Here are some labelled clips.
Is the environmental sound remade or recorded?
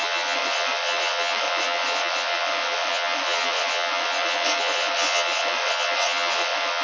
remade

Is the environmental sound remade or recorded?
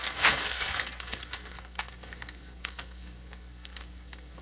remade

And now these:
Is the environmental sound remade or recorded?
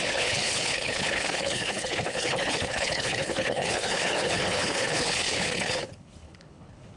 remade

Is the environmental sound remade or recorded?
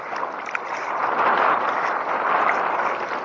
recorded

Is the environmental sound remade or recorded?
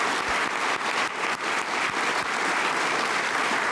recorded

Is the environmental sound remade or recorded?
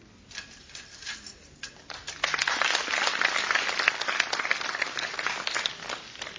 recorded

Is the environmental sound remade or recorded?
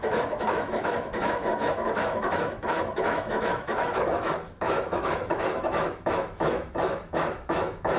remade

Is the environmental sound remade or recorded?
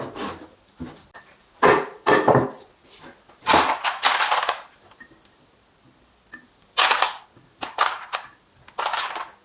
recorded